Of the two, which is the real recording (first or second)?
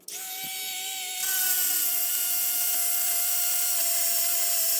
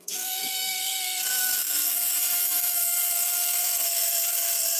first